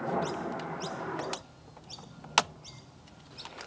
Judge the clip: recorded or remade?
recorded